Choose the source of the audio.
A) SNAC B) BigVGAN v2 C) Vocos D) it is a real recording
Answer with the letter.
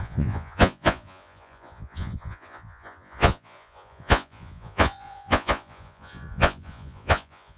C